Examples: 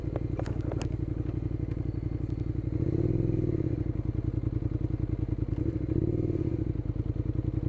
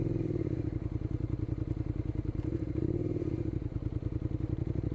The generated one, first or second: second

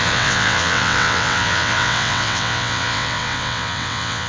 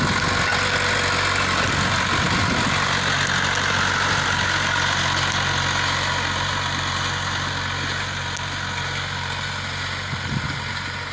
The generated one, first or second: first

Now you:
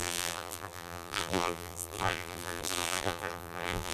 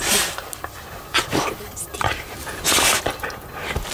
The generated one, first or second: first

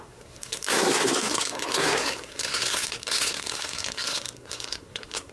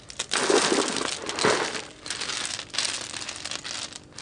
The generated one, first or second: first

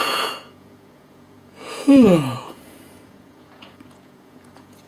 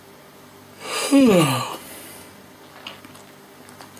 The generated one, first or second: first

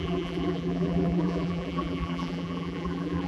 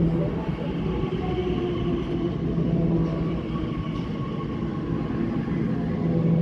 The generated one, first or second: first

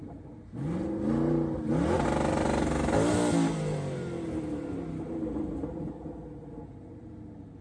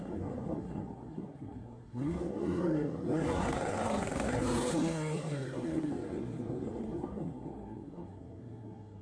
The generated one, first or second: second